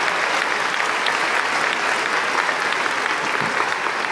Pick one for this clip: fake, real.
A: real